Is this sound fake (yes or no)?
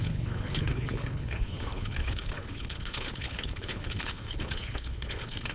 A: yes